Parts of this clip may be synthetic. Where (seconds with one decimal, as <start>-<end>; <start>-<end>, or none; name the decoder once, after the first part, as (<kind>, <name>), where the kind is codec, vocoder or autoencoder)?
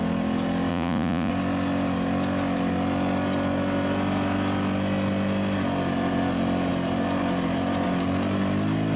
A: 0.7-1.3 (vocoder, Vocos)